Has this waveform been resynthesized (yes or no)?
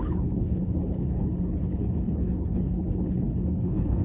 yes